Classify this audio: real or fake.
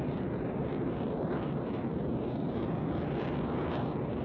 fake